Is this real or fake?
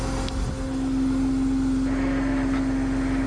real